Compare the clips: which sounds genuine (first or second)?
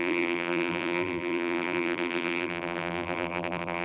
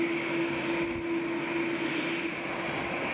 second